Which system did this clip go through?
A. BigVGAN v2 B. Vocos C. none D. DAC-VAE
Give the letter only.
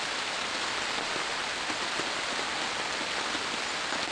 C